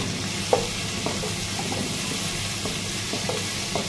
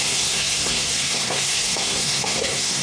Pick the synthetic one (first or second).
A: second